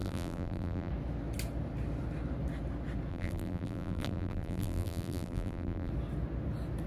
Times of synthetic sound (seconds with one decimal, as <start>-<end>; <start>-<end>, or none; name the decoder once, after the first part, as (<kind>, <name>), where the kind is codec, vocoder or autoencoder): 0.0-0.9 (vocoder, BigVGAN v2); 3.1-5.9